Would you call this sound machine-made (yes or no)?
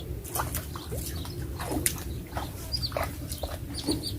no